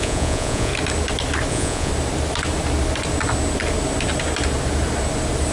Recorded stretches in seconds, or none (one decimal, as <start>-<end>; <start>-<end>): 0.7-1.5; 1.9-5.5